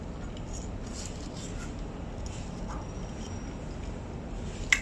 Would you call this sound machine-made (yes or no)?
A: no